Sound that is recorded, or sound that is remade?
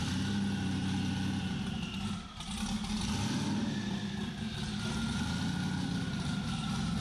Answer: recorded